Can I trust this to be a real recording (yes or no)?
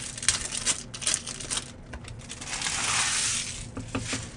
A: yes